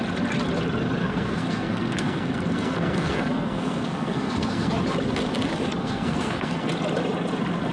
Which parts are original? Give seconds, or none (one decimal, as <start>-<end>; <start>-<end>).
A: 0.0-1.0; 4.7-5.8; 6.7-7.7